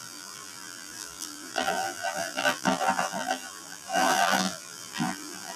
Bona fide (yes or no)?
no